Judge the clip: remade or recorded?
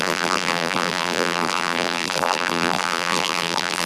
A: remade